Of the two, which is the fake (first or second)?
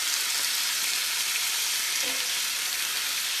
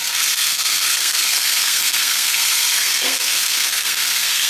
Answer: second